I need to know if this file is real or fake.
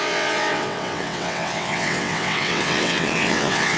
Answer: fake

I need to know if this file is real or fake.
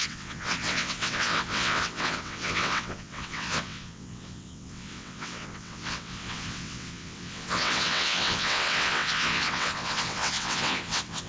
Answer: fake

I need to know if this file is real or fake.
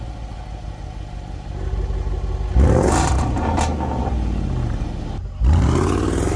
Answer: real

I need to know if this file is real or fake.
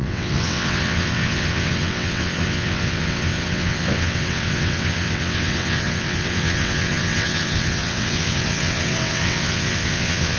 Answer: fake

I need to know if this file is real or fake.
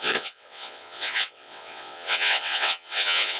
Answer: fake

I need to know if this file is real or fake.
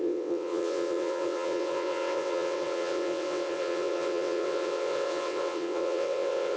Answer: fake